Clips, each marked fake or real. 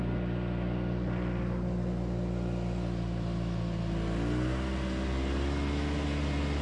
real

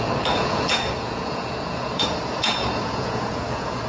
fake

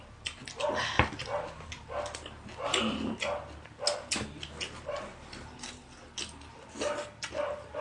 real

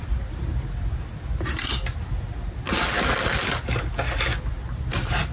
real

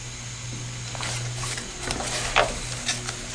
real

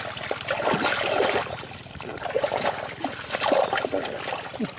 real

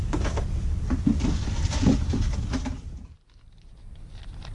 real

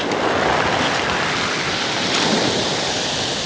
real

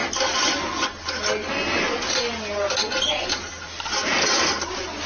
real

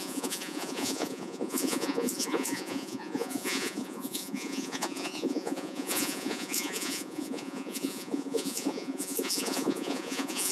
fake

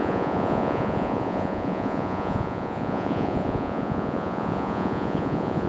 fake